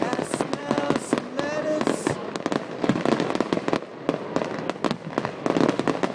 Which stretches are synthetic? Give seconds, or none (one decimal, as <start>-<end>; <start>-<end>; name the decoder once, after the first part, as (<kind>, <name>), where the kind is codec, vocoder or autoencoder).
none